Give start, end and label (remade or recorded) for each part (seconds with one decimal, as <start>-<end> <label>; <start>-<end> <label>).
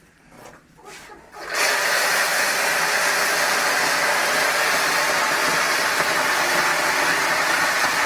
0.0-8.1 recorded